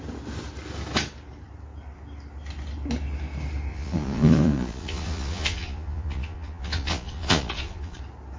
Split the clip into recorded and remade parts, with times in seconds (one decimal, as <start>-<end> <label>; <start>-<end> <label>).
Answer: 0.0-3.7 recorded; 3.7-8.0 remade; 8.0-8.4 recorded